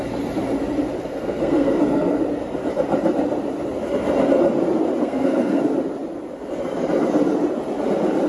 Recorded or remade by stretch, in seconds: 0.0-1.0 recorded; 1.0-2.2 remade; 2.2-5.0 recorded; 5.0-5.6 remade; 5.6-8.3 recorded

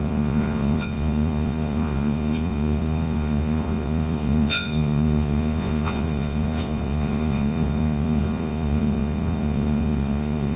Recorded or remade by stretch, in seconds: 0.0-10.6 remade

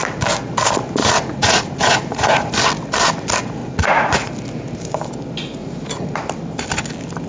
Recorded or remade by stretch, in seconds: 0.0-1.0 recorded; 1.0-2.5 remade; 2.5-3.6 recorded; 3.6-4.3 remade; 4.3-5.6 recorded; 5.6-6.2 remade; 6.2-7.3 recorded